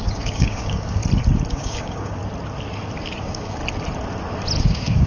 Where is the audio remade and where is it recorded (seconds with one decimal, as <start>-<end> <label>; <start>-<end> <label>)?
0.0-1.0 remade; 1.0-1.5 recorded; 1.5-2.2 remade; 2.2-3.2 recorded; 3.2-3.6 remade; 3.6-4.6 recorded; 4.6-5.1 remade